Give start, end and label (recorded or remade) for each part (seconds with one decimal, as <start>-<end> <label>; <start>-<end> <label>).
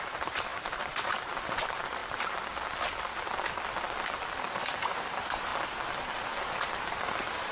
0.0-2.0 remade; 2.0-4.4 recorded; 4.4-5.5 remade; 5.5-6.9 recorded; 6.9-7.5 remade